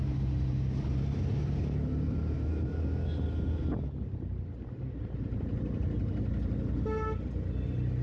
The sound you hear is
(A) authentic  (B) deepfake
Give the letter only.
A